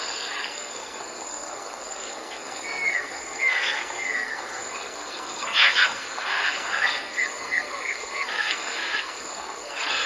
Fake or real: fake